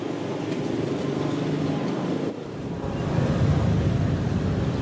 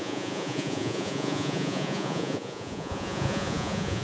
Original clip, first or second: first